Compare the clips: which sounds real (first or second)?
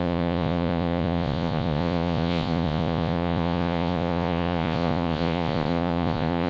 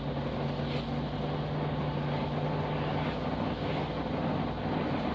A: second